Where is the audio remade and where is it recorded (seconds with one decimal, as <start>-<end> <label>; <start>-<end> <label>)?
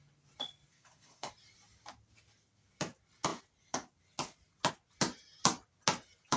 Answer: 0.0-0.7 recorded; 0.7-1.3 remade; 1.3-6.4 recorded